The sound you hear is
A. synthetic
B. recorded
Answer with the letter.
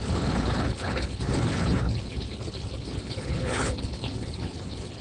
A